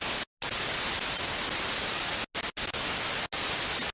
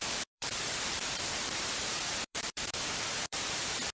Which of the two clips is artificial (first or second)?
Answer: second